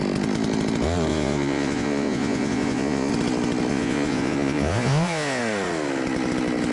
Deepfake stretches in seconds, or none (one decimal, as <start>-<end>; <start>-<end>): 1.1-3.1; 3.7-5.4